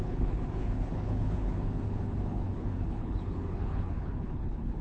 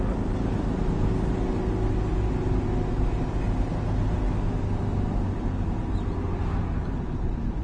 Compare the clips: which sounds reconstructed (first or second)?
first